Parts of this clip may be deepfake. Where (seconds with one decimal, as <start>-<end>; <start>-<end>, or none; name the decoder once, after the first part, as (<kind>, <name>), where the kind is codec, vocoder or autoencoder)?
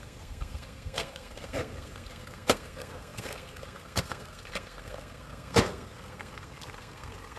0.0-7.4 (codec, SNAC)